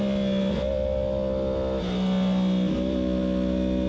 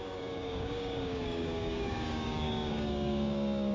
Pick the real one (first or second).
first